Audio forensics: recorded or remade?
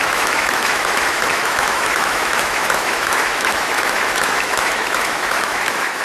remade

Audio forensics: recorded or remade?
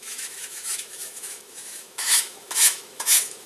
remade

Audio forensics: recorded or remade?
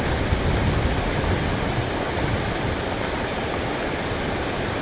recorded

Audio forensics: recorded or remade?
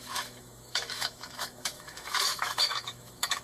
remade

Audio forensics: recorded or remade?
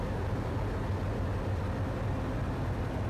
recorded